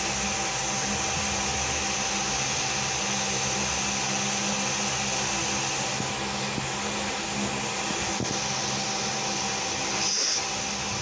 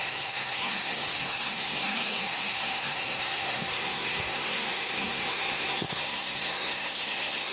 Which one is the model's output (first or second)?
second